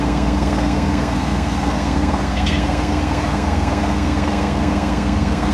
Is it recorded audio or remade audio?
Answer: remade